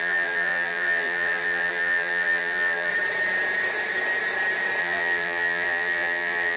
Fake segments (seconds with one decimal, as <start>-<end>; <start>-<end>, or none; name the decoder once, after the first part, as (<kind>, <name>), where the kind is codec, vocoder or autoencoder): 0.0-2.9 (vocoder, BigVGAN v2); 4.8-6.6